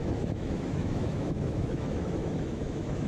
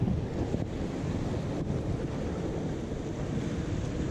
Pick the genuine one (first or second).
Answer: second